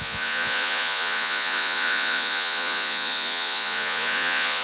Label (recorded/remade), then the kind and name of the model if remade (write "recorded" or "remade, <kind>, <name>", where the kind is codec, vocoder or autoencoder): remade, vocoder, Vocos